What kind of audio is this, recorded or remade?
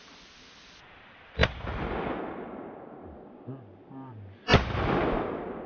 recorded